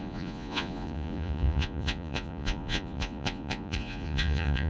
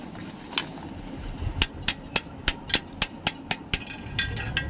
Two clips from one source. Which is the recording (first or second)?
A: second